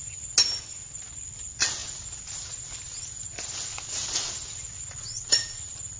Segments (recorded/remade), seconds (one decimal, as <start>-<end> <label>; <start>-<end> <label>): 0.0-3.7 recorded; 3.7-4.3 remade; 4.3-5.0 recorded; 5.0-5.6 remade; 5.6-6.0 recorded